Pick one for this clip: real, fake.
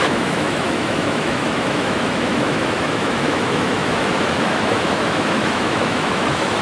fake